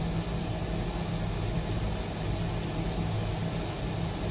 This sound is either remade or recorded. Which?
recorded